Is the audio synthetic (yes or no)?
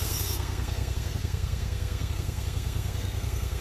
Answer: yes